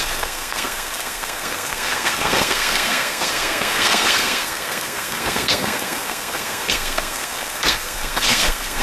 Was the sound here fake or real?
fake